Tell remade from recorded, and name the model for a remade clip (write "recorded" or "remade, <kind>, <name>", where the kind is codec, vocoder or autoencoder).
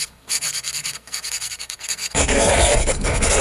remade, codec, SNAC